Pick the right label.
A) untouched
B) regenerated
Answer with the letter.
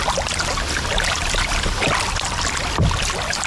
A